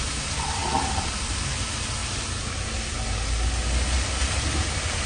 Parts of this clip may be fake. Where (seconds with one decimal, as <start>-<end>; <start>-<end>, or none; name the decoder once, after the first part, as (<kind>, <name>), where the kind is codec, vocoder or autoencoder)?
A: none